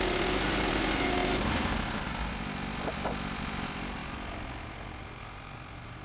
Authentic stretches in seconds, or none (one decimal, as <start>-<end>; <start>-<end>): 0.0-6.0